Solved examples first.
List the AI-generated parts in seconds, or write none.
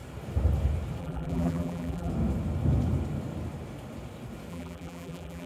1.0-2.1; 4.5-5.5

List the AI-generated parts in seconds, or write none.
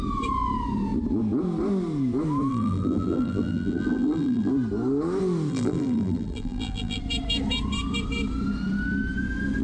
2.5-4.5; 5.5-7.0